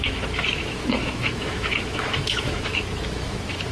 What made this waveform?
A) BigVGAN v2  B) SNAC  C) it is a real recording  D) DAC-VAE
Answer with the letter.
D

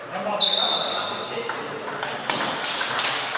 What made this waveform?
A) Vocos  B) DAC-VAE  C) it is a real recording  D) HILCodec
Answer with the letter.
C